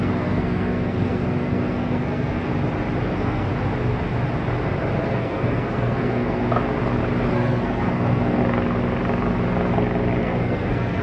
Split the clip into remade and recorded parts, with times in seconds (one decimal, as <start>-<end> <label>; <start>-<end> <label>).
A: 0.0-2.5 remade; 2.5-3.0 recorded; 3.0-3.5 remade; 3.5-5.0 recorded; 5.0-6.4 remade; 6.4-7.3 recorded; 7.3-8.4 remade; 8.4-10.2 recorded; 10.2-11.0 remade